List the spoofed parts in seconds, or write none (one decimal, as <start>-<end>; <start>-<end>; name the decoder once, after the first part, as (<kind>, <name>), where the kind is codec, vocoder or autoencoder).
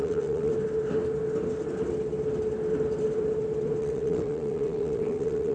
0.0-0.5 (vocoder, WaveNeXt); 3.8-5.5